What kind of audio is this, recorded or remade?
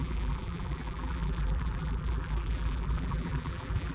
remade